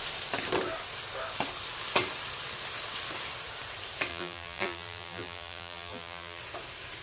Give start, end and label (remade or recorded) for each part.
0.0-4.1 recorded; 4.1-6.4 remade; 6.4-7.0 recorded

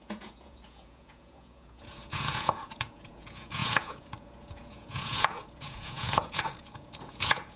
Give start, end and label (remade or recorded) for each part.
0.0-7.6 remade

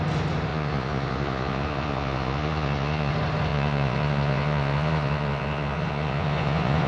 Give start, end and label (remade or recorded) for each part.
0.0-0.5 recorded; 0.5-3.1 remade; 3.1-3.5 recorded; 3.5-6.9 remade